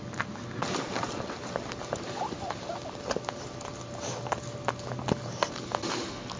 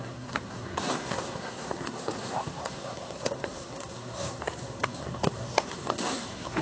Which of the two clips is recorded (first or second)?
first